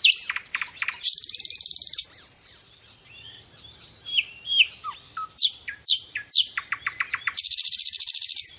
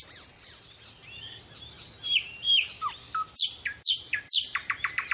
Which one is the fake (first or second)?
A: first